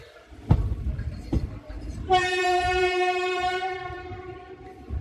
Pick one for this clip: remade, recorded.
remade